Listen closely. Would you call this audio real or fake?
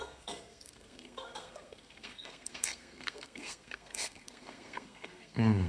fake